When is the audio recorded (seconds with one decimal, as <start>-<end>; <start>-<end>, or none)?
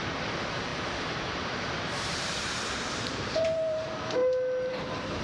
4.2-4.7